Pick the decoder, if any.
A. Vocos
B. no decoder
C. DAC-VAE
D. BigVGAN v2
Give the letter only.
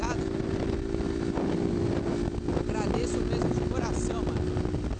B